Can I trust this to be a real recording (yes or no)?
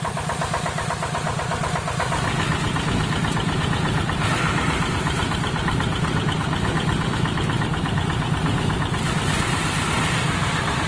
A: yes